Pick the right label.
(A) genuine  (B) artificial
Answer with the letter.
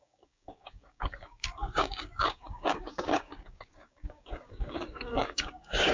B